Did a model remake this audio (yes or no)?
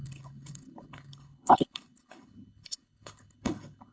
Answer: yes